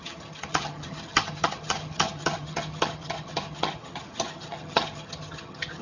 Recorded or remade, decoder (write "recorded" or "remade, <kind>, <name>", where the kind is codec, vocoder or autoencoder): remade, vocoder, HiFi-GAN